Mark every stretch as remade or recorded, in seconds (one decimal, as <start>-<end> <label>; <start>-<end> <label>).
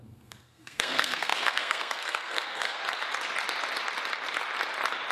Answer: 0.0-2.8 remade; 2.8-5.1 recorded